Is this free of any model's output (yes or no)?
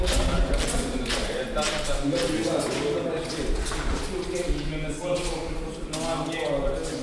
yes